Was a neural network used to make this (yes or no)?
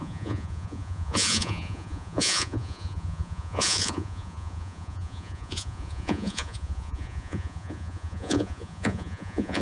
yes